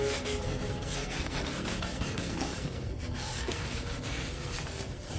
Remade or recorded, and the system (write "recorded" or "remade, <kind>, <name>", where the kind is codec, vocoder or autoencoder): remade, codec, SNAC